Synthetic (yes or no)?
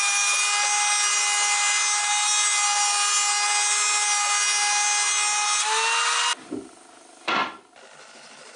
no